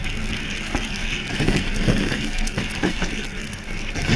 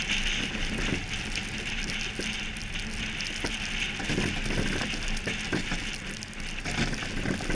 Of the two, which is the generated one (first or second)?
first